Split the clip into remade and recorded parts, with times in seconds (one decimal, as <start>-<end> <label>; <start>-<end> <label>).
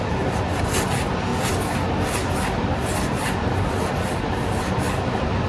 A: 0.0-5.5 recorded